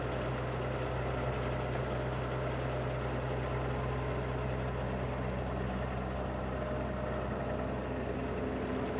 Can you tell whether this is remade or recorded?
recorded